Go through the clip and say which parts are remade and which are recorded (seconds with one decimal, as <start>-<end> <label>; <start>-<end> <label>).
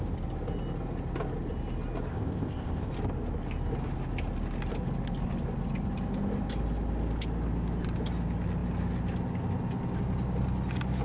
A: 0.0-2.1 recorded; 2.1-2.9 remade; 2.9-11.0 recorded